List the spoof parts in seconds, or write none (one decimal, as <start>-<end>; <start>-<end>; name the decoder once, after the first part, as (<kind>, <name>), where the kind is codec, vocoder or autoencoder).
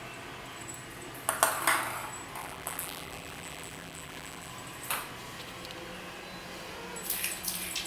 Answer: 2.4-4.5 (vocoder, BigVGAN v2)